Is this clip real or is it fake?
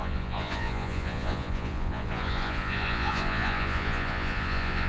fake